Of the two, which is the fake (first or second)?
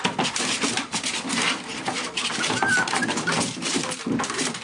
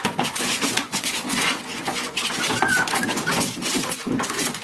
second